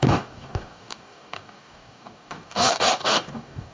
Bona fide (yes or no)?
no